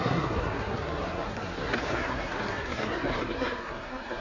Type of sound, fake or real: fake